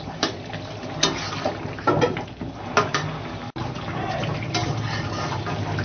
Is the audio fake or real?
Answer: real